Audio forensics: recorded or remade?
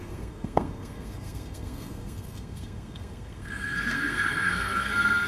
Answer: remade